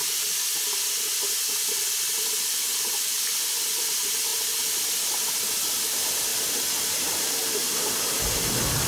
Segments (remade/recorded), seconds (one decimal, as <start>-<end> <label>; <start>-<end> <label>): 0.0-6.3 recorded; 6.3-8.1 remade; 8.1-8.9 recorded